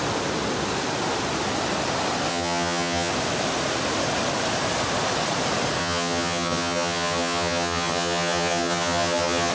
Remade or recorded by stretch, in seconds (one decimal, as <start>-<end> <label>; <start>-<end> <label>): 0.0-2.3 recorded; 2.3-3.1 remade; 3.1-5.8 recorded; 5.8-9.5 remade